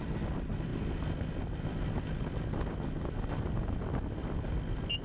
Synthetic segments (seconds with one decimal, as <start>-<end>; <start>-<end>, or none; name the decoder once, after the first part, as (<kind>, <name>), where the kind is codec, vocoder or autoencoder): none